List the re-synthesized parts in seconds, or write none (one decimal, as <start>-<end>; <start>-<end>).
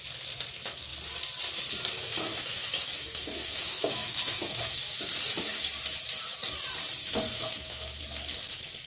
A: 2.3-5.6; 7.0-8.0